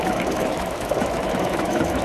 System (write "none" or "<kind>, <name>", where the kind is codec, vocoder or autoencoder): autoencoder, DAC-VAE